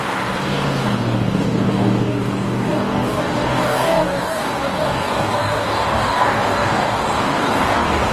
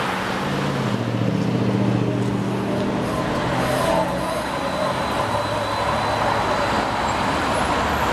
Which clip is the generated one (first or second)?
first